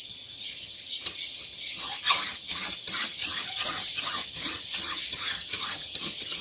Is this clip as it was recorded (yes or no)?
no